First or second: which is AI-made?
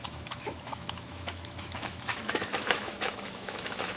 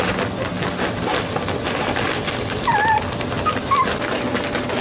first